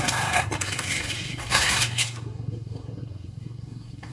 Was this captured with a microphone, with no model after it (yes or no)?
no